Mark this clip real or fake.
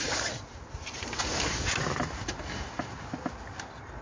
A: real